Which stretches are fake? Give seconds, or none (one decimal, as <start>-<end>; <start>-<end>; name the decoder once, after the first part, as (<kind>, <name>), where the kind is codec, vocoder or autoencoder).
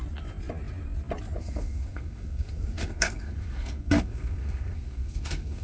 1.4-5.6 (codec, SNAC)